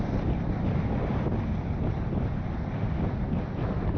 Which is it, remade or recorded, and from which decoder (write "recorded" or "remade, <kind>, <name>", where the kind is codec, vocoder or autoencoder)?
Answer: remade, vocoder, BigVGAN v2